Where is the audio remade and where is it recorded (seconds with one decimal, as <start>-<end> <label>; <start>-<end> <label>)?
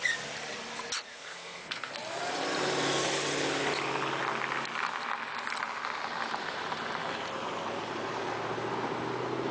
0.0-1.1 recorded; 1.1-1.9 remade; 1.9-9.5 recorded